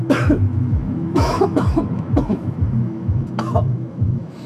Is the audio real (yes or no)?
no